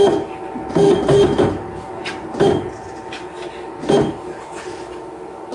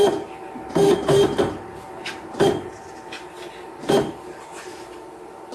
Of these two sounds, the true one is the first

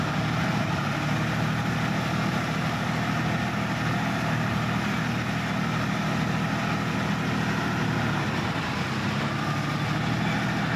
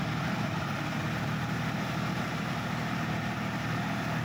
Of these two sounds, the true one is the first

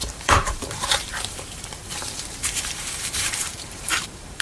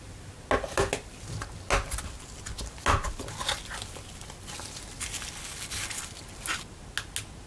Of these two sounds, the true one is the second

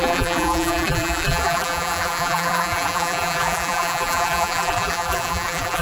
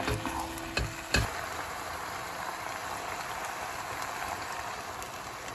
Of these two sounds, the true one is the second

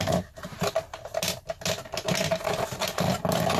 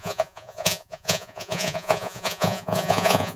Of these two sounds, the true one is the first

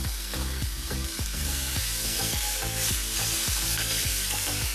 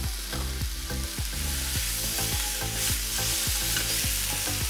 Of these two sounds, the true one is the second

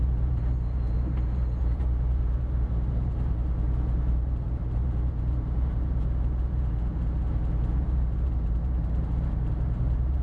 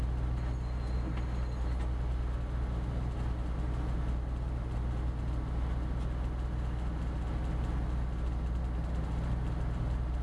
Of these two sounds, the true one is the second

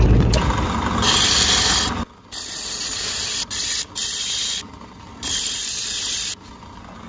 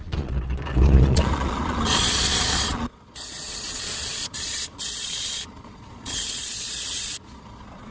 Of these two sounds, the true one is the first